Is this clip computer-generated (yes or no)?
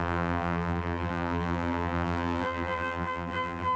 yes